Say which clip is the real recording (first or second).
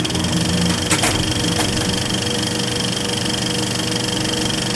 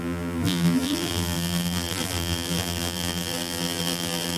first